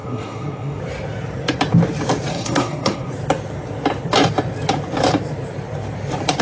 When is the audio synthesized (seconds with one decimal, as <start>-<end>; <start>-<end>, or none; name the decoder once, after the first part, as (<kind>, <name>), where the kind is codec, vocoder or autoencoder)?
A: 0.0-0.8 (codec, SNAC); 2.3-3.1